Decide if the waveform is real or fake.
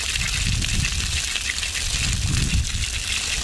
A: real